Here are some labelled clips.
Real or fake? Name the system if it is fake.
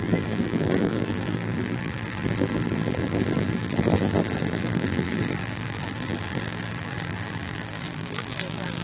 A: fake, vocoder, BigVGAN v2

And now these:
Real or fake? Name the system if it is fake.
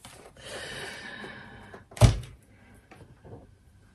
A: fake, vocoder, BigVGAN v2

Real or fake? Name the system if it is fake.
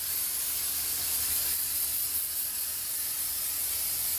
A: fake, vocoder, BigVGAN v2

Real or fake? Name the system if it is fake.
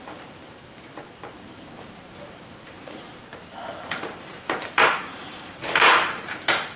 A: fake, vocoder, BigVGAN v2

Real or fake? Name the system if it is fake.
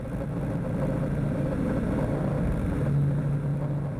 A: real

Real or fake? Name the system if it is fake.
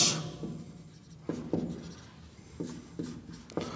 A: real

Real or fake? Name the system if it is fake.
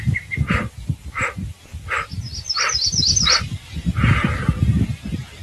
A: real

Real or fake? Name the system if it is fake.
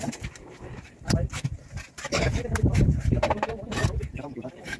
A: fake, vocoder, BigVGAN v2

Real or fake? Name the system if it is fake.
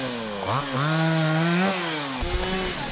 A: real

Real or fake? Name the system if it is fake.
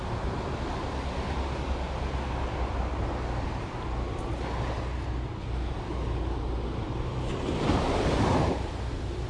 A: real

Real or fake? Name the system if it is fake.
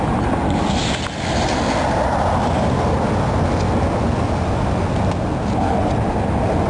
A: real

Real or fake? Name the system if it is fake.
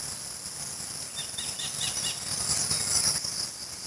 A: real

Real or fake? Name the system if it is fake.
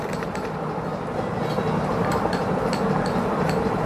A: real